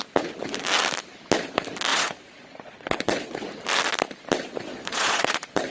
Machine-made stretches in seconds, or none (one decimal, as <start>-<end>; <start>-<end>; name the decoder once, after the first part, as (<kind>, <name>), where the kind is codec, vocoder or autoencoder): 1.9-3.4 (vocoder, Vocos); 4.7-5.7